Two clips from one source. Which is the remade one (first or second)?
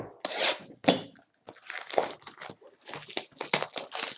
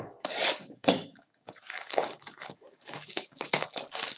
second